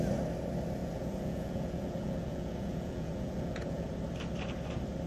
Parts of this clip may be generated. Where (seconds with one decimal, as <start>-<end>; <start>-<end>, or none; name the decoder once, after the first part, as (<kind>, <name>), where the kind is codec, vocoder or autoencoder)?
0.8-3.9 (vocoder, Vocos)

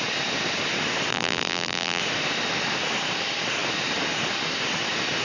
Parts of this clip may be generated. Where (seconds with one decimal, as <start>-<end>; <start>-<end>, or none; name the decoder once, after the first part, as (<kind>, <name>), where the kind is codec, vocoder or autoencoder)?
1.1-2.0 (vocoder, BigVGAN v2)